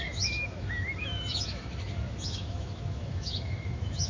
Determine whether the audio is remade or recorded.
remade